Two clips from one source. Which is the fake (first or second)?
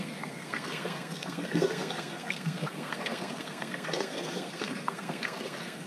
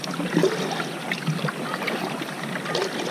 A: first